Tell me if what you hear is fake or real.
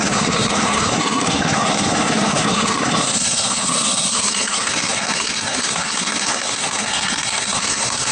fake